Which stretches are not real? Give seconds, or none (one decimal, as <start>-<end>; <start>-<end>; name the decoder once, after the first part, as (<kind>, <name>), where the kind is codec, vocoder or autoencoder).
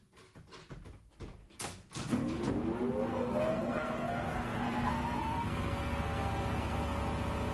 1.4-2.5 (codec, SNAC); 3.1-7.0